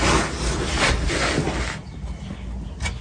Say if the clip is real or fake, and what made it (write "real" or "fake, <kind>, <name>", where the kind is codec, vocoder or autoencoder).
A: real